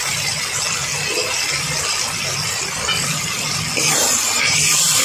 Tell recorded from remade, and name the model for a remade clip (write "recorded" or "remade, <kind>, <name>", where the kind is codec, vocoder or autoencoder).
recorded